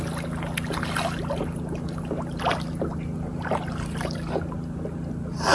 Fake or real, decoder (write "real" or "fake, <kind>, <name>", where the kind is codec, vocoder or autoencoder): real